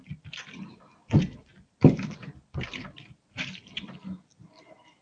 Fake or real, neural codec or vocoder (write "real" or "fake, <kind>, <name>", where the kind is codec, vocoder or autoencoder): fake, vocoder, BigVGAN v2